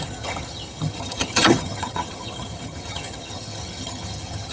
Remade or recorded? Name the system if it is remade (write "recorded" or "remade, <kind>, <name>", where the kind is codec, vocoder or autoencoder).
remade, vocoder, HiFi-GAN